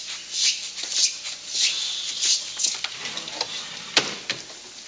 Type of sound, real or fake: real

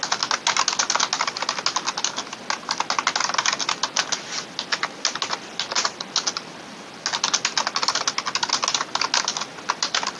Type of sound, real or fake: real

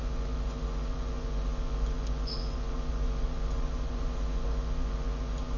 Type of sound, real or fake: fake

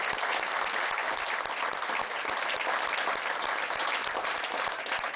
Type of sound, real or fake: real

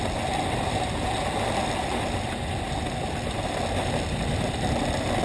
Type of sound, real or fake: real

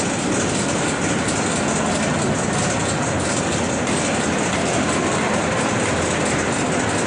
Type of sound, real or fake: real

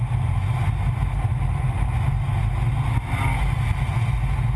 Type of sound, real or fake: real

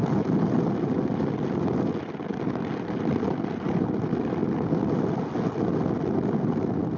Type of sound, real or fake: real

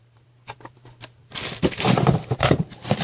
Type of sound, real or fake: fake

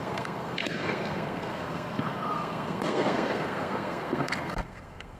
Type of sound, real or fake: fake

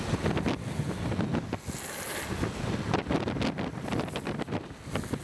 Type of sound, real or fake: real